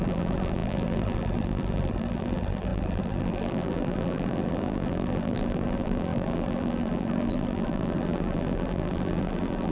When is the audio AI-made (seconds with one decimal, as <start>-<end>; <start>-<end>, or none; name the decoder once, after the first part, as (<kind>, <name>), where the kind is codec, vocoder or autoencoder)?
0.0-9.7 (vocoder, BigVGAN v2)